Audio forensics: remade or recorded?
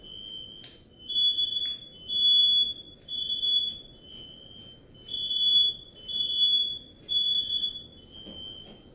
recorded